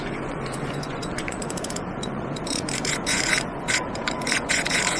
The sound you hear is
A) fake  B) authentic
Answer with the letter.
A